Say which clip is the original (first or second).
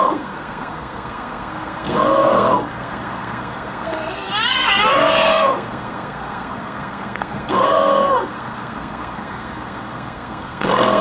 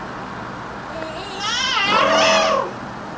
second